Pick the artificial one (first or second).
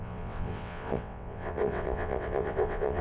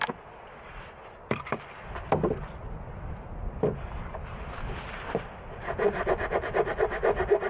first